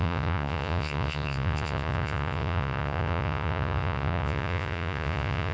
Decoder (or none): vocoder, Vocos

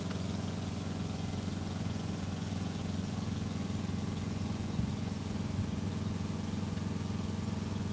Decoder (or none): vocoder, Vocos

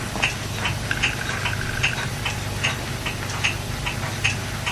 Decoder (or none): none